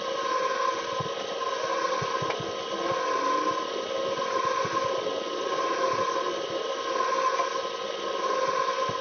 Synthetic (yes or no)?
no